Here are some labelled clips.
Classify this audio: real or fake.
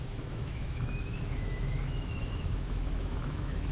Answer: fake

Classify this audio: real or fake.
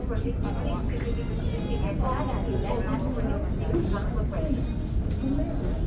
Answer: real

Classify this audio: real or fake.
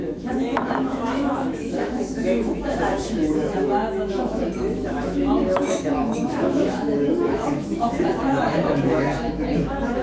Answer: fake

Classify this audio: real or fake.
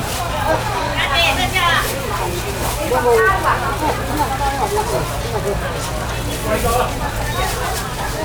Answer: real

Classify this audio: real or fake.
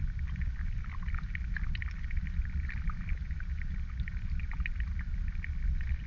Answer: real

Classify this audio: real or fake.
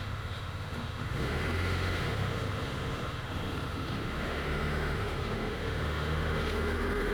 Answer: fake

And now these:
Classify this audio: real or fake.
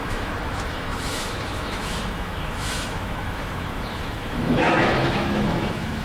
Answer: fake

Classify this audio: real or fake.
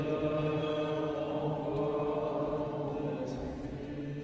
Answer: real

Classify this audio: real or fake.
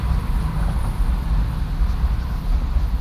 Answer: real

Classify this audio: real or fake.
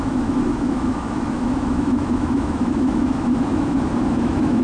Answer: fake